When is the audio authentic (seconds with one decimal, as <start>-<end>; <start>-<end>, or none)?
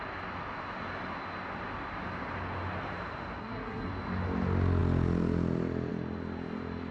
0.0-3.4; 3.9-6.9